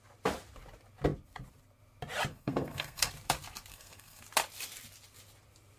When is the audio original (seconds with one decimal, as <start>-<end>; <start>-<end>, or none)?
0.0-2.3; 3.1-3.7; 4.2-5.8